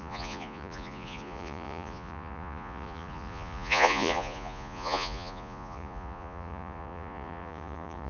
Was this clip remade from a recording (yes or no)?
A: yes